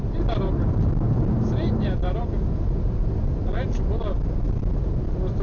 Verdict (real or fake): real